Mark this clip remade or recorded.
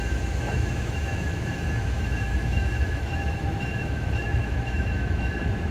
remade